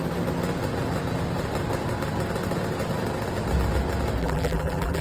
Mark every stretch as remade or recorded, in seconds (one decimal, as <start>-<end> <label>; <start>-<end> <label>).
0.0-4.2 recorded; 4.2-5.0 remade